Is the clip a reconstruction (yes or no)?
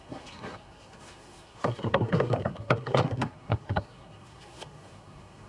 yes